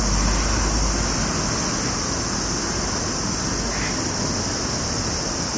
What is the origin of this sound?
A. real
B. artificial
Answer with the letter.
A